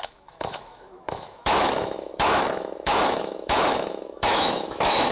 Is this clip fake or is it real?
fake